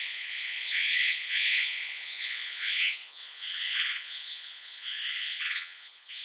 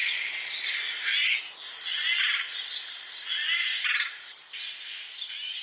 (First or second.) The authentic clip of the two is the second